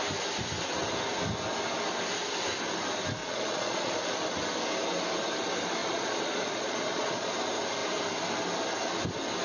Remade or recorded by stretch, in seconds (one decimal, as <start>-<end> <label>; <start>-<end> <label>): 0.0-3.2 recorded; 3.2-3.9 remade; 3.9-5.8 recorded; 5.8-7.3 remade; 7.3-9.4 recorded